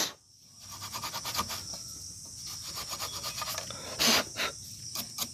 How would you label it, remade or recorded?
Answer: recorded